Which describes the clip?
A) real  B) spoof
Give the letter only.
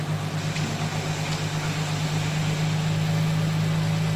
A